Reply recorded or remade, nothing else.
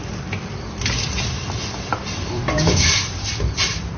remade